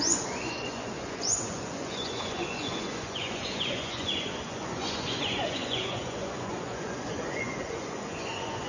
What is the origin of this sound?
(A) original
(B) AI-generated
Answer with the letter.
B